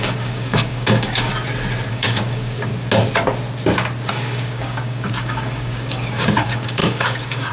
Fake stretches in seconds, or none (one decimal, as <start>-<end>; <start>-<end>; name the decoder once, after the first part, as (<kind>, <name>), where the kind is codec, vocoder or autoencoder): 0.0-1.3 (codec, DAC); 1.9-2.7; 4.1-7.5